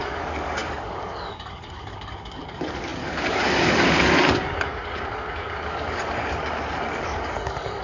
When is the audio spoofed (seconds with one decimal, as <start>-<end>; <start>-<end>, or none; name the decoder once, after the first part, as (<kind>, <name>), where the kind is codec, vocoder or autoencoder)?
0.0-7.8 (codec, DAC)